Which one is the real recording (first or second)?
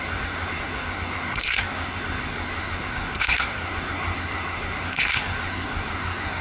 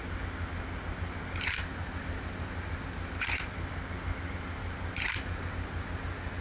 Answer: second